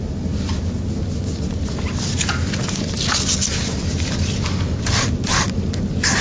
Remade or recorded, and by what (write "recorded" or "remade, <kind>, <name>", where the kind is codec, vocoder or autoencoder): recorded